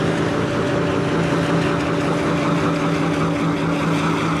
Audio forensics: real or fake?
real